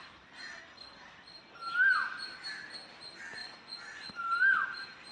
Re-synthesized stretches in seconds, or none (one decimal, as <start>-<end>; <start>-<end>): 3.4-4.1